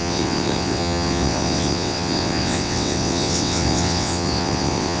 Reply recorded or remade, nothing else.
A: remade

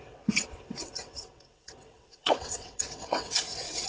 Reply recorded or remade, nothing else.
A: remade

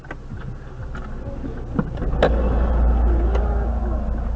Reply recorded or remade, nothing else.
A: recorded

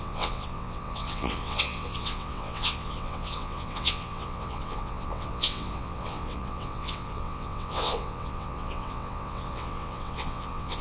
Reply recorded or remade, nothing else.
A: remade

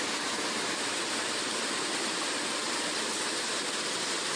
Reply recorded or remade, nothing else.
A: recorded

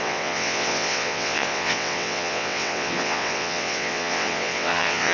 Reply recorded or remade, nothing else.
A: remade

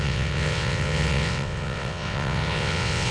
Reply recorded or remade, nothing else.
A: remade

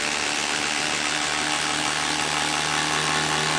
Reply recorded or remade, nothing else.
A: recorded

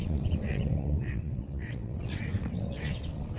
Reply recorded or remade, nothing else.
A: remade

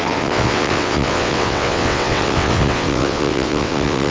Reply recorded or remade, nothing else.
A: remade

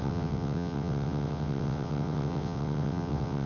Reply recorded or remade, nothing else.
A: remade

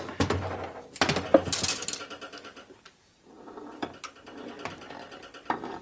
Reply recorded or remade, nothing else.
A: recorded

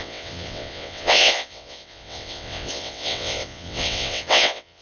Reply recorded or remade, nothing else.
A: remade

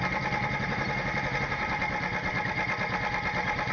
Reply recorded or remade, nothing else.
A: recorded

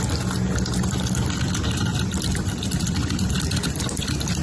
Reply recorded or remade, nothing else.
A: recorded